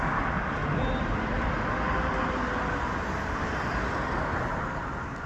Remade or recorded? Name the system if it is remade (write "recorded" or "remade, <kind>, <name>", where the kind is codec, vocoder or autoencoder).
recorded